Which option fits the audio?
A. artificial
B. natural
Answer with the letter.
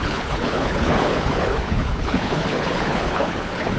A